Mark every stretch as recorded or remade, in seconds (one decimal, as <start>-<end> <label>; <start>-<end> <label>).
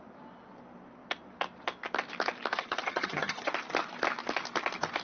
0.0-2.5 recorded; 2.5-3.5 remade; 3.5-5.0 recorded